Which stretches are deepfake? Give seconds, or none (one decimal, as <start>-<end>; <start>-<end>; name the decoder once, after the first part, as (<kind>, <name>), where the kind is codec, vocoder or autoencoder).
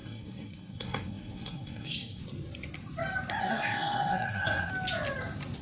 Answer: 0.0-2.2 (codec, SNAC); 3.4-4.7